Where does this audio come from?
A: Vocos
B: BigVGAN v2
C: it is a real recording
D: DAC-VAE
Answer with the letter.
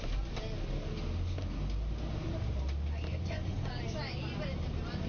C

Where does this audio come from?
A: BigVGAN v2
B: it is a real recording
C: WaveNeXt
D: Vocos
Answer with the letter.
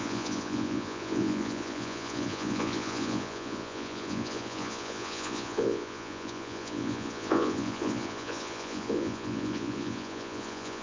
D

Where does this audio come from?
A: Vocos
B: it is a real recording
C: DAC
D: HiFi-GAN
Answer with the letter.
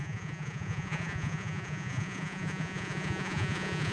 A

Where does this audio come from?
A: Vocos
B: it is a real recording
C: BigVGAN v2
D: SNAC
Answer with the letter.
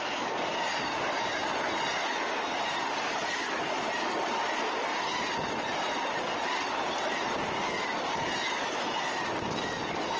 B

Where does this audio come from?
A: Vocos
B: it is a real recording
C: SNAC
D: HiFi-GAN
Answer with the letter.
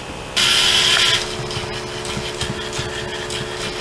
B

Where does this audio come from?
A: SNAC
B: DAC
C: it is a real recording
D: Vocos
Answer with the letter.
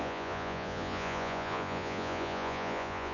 D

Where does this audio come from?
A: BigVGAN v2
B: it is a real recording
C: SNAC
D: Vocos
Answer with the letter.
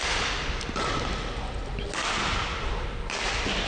B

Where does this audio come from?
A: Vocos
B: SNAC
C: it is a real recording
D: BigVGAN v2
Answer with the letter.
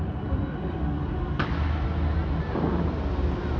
C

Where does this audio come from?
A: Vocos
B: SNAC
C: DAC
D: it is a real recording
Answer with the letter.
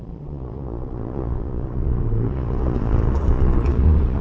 A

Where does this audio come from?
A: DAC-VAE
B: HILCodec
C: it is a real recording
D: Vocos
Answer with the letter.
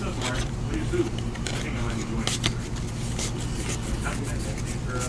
C